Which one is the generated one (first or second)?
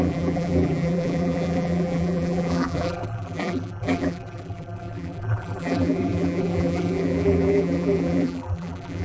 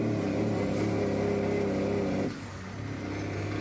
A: first